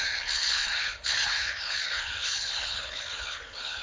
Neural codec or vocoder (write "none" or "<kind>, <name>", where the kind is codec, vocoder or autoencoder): codec, HILCodec